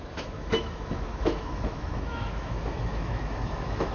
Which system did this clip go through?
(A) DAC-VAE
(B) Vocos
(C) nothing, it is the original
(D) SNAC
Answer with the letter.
A